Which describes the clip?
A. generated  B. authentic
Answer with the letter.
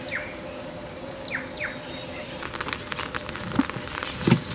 B